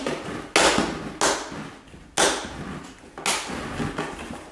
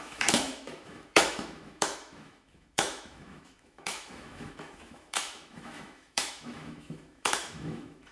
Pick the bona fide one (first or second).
first